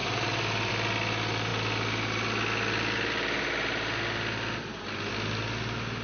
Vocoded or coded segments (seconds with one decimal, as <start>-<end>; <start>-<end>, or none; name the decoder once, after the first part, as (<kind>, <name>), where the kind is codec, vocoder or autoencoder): 0.0-0.7 (vocoder, BigVGAN v2)